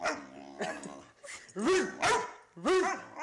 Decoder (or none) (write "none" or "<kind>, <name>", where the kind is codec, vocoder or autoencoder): none